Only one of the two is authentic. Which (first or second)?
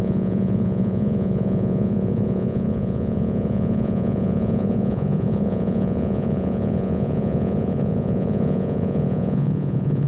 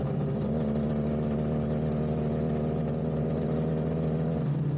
second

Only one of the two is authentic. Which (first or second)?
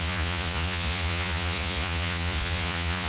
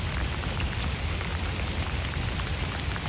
second